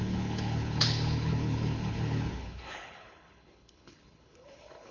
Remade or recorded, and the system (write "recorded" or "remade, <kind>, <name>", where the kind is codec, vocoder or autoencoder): remade, codec, HILCodec